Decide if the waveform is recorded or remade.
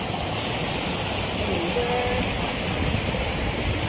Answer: recorded